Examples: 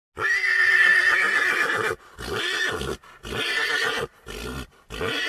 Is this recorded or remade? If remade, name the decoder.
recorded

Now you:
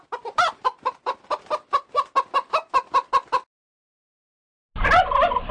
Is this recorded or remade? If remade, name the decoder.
recorded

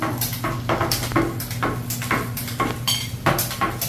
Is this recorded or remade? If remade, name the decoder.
recorded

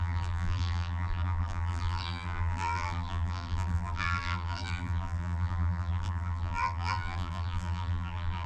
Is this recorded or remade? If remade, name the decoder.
remade, vocoder, BigVGAN v2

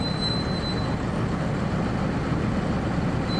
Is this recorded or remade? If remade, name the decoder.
recorded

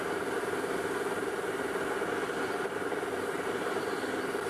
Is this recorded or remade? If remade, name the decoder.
recorded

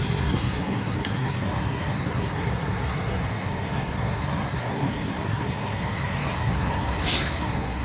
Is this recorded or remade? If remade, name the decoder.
remade, codec, SNAC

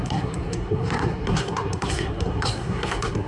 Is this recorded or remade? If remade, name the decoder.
remade, codec, SNAC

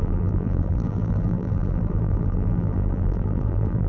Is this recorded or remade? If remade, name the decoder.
remade, vocoder, BigVGAN v2